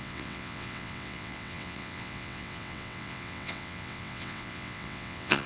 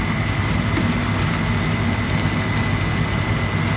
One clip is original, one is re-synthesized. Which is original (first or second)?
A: second